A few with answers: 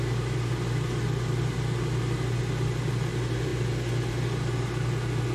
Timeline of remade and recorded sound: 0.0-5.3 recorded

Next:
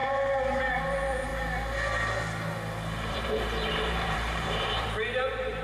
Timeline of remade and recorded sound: 0.0-1.3 remade; 1.3-3.1 recorded; 3.1-5.6 remade

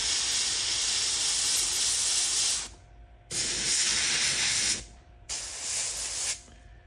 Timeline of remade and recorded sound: 0.0-3.9 recorded; 3.9-6.3 remade; 6.3-6.9 recorded